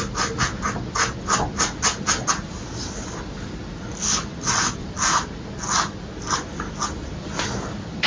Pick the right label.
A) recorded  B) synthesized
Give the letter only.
A